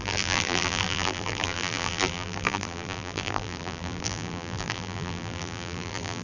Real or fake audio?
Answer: fake